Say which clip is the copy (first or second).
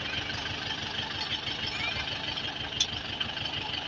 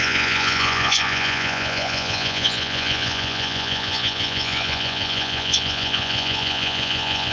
second